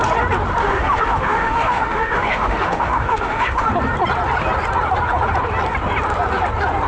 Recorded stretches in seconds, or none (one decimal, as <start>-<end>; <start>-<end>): 0.0-0.6; 3.7-6.9